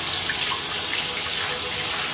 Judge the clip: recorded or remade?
recorded